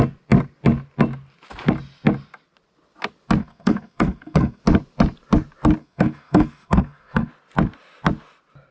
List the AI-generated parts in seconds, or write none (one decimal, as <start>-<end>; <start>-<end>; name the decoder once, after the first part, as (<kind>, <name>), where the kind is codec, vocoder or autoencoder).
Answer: 3.4-4.6 (codec, SNAC); 5.8-7.3